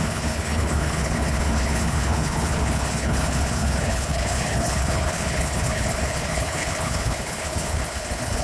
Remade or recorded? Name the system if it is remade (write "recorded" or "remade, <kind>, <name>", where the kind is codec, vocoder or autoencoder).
remade, codec, HILCodec